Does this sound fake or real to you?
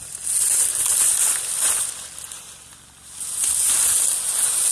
real